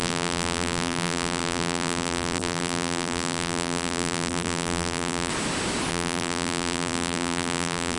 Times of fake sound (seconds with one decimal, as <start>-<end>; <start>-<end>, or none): 0.0-5.3; 5.9-8.0